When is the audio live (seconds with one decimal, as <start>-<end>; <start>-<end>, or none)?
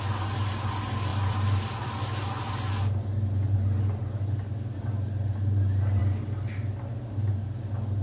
0.0-1.1; 2.0-8.0